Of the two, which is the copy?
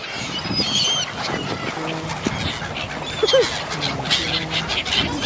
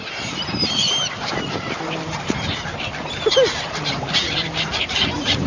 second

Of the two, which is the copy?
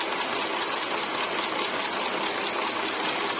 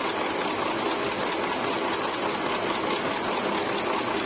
first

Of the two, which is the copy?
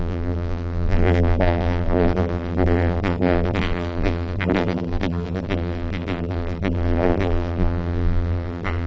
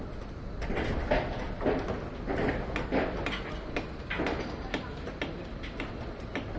first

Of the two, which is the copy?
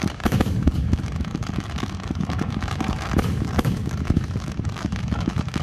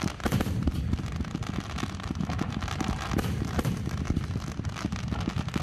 first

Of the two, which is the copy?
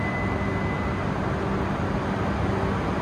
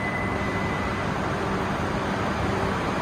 second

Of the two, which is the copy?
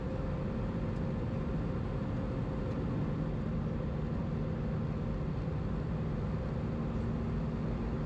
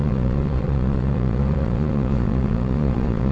second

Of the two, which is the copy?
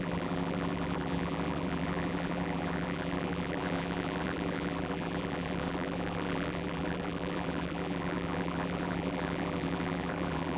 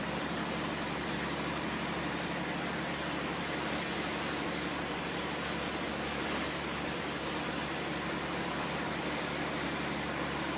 first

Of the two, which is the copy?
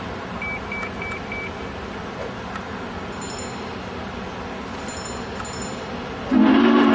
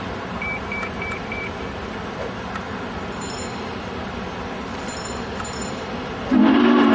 second